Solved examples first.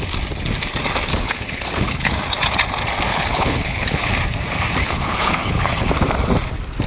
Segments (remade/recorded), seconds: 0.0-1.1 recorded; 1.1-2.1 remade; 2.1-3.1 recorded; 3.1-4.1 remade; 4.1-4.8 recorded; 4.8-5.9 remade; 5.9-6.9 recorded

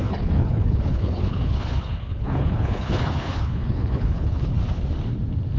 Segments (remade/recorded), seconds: 0.0-4.6 remade; 4.6-5.6 recorded

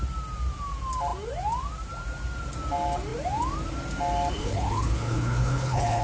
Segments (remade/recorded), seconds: 0.0-4.4 recorded; 4.4-6.0 remade

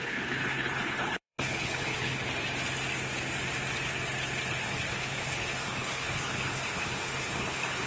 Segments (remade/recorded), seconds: 0.0-2.2 remade; 2.2-4.5 recorded; 4.5-7.9 remade

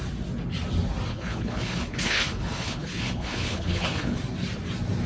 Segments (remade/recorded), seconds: 0.0-1.1 recorded; 1.1-4.2 remade; 4.2-5.1 recorded